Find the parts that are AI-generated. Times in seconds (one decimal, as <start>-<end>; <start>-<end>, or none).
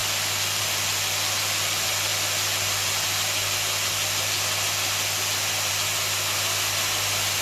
none